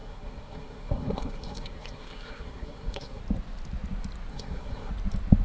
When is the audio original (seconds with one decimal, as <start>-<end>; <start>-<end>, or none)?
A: 3.2-4.3; 4.9-5.4